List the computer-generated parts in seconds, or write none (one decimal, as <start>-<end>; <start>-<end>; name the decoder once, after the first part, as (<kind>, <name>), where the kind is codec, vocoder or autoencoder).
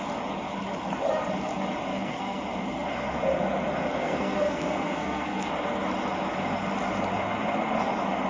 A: 1.9-2.4 (codec, SNAC); 4.0-5.5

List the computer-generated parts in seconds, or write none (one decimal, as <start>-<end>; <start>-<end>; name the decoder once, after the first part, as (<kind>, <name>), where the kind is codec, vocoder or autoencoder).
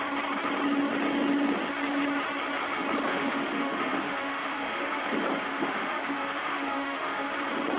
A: 3.1-5.0 (autoencoder, DAC-VAE); 5.5-7.3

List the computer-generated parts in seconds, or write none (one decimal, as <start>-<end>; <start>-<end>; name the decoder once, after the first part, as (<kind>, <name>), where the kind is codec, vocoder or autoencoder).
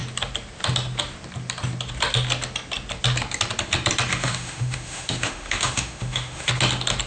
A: 4.1-6.5 (autoencoder, DAC-VAE)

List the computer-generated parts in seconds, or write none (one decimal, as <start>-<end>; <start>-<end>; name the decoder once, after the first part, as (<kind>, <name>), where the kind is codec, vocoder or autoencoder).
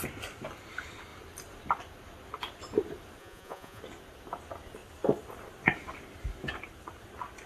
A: 3.2-3.8 (vocoder, Vocos)